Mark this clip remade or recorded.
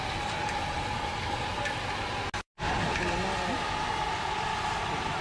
recorded